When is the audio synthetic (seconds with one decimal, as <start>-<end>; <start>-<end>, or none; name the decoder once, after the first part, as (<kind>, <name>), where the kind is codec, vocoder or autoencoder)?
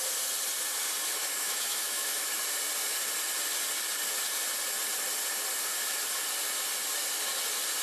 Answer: 1.2-2.4 (autoencoder, DAC-VAE)